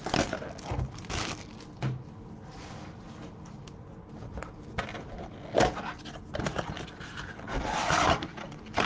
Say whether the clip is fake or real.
real